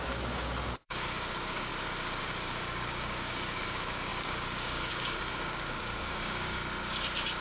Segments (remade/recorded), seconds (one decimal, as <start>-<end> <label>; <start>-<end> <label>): 0.0-1.7 remade; 1.7-2.2 recorded; 2.2-6.6 remade; 6.6-7.4 recorded